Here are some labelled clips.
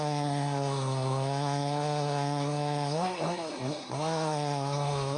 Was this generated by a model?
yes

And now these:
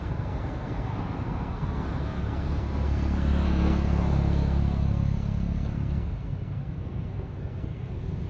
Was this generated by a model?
yes